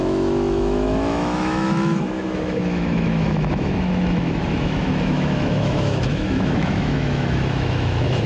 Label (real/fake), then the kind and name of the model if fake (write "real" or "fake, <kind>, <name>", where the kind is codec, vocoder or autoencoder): fake, autoencoder, DAC-VAE